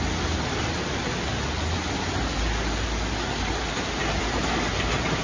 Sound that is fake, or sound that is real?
real